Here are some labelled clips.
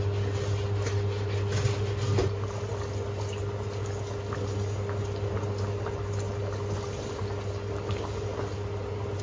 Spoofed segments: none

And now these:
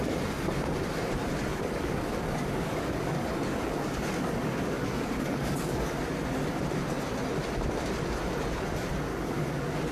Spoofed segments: 1.5-6.0 (codec, DAC); 9.1-9.9

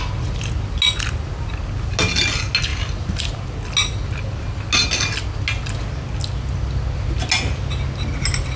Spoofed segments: none

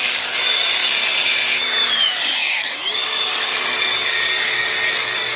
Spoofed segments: 0.0-5.4 (codec, DAC)

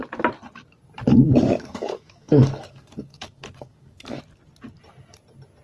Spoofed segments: 1.1-4.2 (codec, DAC)

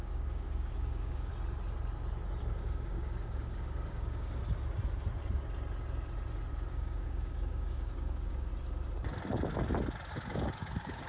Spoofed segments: 0.0-1.3 (codec, DAC); 2.4-4.4; 6.7-8.5; 10.1-11.1